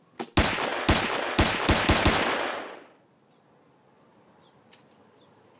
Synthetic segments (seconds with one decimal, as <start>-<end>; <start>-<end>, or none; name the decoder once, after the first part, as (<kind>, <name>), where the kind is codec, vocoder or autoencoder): none

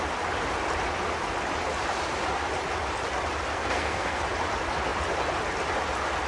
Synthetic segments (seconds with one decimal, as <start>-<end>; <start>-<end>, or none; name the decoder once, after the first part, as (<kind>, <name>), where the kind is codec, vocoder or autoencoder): 3.5-4.2 (codec, SNAC)